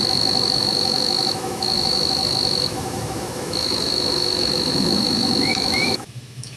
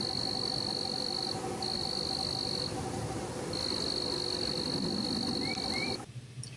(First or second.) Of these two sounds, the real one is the second